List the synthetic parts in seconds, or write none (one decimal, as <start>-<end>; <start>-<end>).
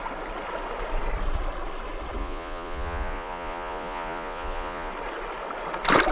2.2-4.9